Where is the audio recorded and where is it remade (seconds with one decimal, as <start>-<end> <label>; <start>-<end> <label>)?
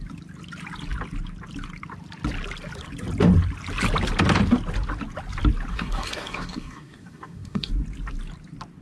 0.0-5.7 recorded; 5.7-7.7 remade; 7.7-8.8 recorded